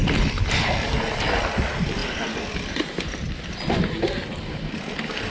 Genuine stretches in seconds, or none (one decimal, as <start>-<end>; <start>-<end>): 0.0-5.3